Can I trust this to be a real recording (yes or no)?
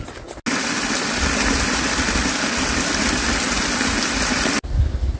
yes